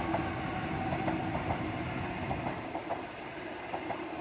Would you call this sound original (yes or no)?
yes